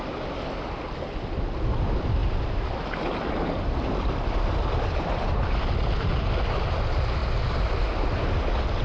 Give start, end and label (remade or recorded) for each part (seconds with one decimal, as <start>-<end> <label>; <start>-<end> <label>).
0.0-8.8 recorded